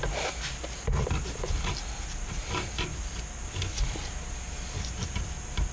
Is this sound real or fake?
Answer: real